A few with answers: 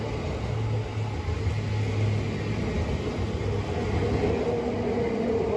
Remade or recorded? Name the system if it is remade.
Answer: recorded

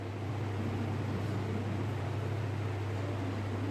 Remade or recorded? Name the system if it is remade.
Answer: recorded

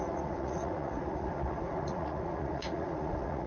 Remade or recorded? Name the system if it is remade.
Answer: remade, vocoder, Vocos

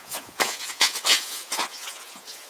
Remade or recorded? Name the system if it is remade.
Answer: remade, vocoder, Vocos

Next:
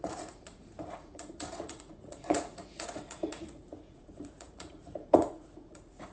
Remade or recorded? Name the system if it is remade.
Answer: remade, vocoder, Vocos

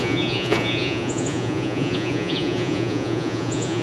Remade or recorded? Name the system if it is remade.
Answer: remade, vocoder, Vocos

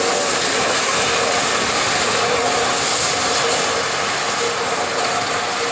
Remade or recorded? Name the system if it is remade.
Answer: recorded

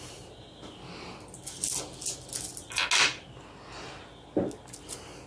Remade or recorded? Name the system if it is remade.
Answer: recorded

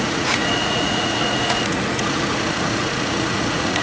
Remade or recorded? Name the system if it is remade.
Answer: remade, vocoder, Vocos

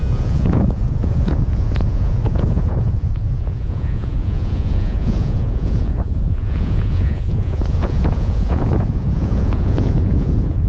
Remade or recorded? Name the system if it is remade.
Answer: remade, vocoder, Vocos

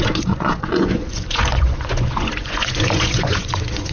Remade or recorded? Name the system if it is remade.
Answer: remade, vocoder, Vocos